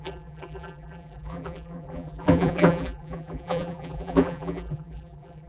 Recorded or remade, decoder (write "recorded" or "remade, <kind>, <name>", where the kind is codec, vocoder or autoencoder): remade, vocoder, BigVGAN v2